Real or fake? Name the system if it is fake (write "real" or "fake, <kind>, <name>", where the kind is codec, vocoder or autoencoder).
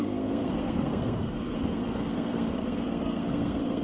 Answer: fake, codec, SNAC